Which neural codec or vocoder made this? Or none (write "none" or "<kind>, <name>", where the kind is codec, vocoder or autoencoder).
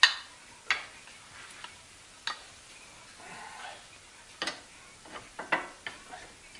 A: none